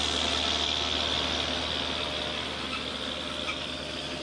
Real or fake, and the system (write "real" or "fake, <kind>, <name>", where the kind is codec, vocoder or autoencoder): real